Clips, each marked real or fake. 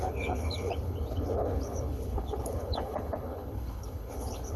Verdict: fake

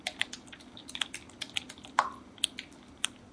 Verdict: real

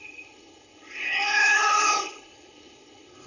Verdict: fake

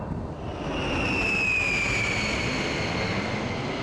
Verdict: real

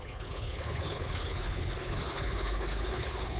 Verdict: fake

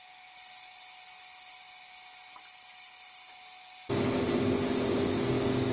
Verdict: real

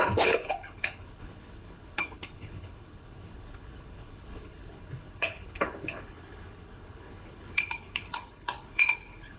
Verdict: fake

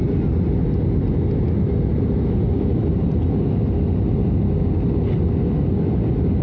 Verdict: real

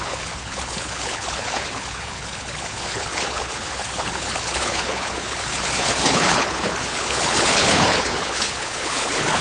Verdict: fake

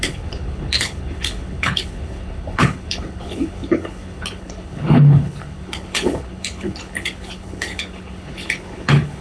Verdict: fake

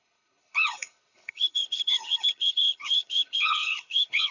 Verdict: fake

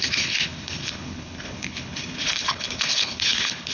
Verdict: fake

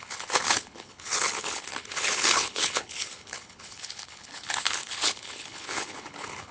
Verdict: fake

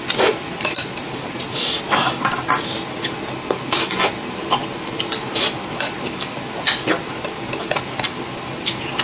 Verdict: real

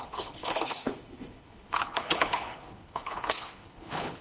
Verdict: fake